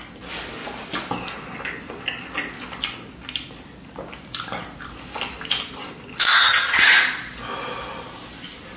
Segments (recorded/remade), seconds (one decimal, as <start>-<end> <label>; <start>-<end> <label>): 0.0-6.4 recorded; 6.4-7.0 remade; 7.0-8.8 recorded